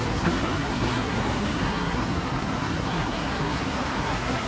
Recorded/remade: remade